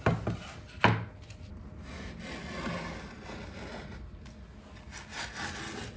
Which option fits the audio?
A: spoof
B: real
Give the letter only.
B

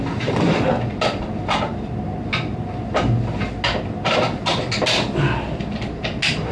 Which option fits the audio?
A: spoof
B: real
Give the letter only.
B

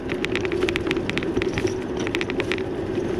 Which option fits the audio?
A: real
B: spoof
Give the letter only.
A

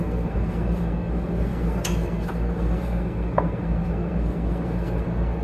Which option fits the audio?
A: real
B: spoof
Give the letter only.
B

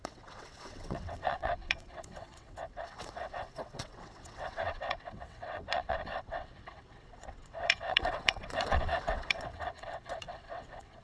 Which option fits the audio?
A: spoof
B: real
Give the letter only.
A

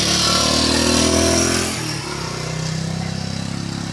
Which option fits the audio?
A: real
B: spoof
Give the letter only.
A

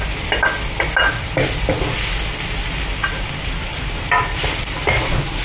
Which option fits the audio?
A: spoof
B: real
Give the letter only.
B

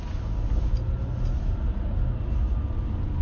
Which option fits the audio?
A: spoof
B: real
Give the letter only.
B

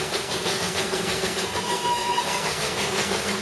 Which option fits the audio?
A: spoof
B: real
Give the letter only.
A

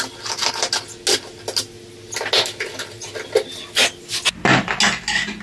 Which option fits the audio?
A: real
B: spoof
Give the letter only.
A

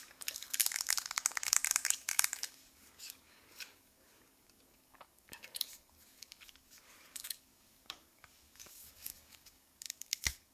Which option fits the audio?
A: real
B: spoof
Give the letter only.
B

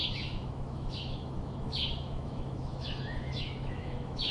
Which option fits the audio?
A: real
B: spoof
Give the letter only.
B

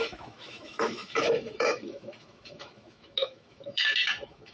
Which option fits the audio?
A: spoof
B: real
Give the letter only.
A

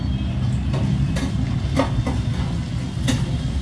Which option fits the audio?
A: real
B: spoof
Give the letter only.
A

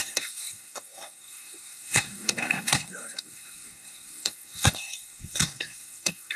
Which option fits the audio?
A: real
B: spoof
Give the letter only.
B